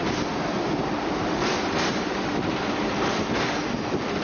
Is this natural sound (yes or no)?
yes